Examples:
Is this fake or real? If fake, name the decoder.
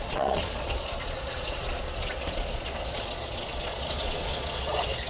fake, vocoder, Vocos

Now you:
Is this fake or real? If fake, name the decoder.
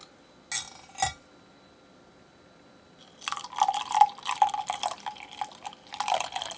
real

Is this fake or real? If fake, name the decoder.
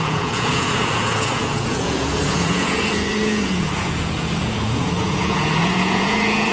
fake, vocoder, Vocos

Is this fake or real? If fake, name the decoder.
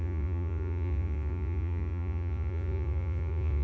fake, vocoder, Vocos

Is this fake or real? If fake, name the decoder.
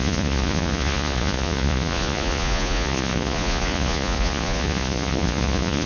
fake, vocoder, Vocos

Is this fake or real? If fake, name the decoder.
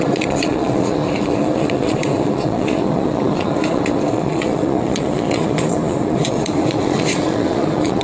fake, vocoder, Vocos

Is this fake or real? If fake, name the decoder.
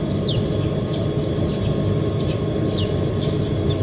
real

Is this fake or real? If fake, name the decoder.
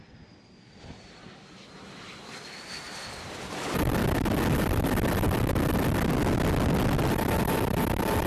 real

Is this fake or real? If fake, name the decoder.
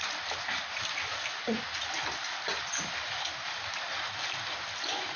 real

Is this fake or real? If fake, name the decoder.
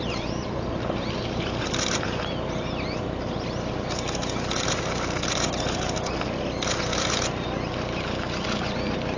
real